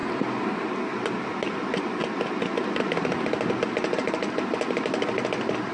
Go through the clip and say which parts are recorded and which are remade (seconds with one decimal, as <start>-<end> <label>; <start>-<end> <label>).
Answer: 0.0-5.7 recorded